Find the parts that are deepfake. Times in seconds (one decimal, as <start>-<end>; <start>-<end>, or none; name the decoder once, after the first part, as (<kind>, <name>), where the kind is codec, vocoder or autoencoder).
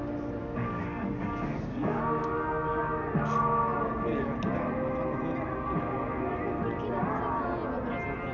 0.4-2.0 (codec, DAC)